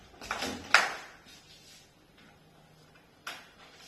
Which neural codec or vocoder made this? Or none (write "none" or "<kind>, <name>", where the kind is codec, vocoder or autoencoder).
none